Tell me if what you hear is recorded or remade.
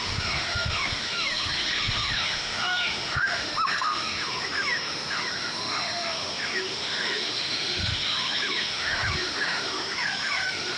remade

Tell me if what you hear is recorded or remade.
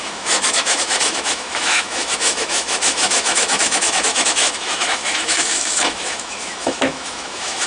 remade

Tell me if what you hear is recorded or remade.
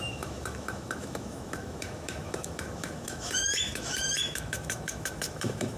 remade